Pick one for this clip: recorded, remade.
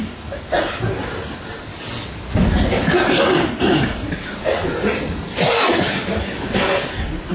recorded